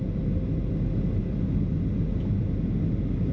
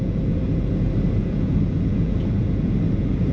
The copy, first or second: second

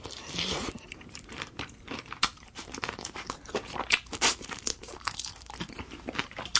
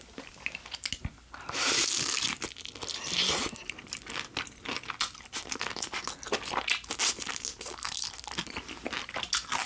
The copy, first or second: first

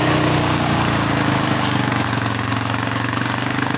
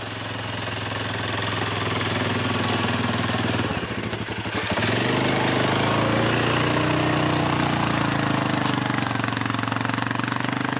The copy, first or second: first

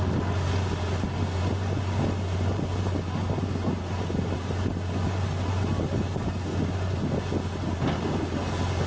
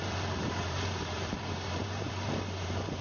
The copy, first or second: second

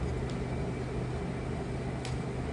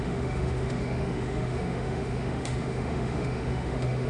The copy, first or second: second